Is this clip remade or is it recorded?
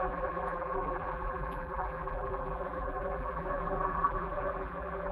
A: remade